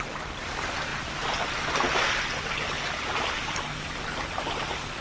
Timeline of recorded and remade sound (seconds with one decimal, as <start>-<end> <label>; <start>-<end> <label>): 0.0-5.0 recorded